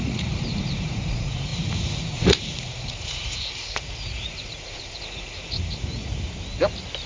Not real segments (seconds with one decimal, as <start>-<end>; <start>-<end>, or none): 0.0-6.1